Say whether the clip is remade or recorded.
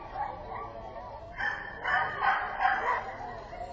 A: remade